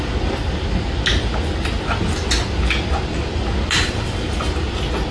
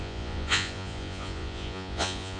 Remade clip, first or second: second